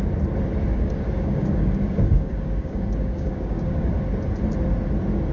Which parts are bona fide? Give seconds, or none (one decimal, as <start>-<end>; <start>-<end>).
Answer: 0.0-0.7; 3.9-5.3